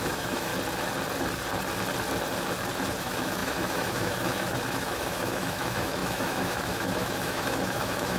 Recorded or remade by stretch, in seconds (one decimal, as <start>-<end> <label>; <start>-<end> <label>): 0.0-0.5 remade; 0.5-3.0 recorded; 3.0-8.2 remade